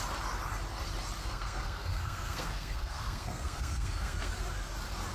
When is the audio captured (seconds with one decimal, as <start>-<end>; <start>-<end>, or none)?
0.0-1.2; 4.3-5.1

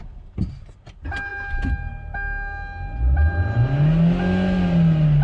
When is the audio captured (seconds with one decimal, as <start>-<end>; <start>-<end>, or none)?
0.0-5.2

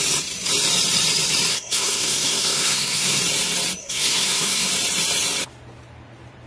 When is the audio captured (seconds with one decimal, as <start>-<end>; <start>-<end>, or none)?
0.0-1.5; 3.2-3.8; 4.7-6.5